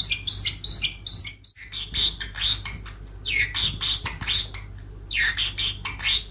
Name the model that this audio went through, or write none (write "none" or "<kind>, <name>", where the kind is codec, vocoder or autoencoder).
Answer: none